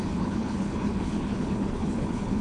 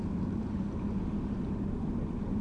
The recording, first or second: second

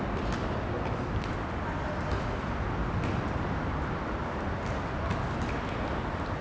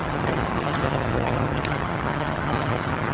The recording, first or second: first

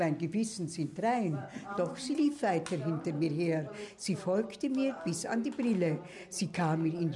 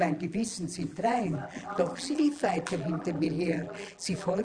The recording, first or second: first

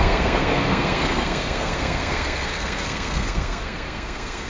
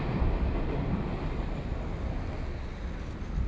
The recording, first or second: second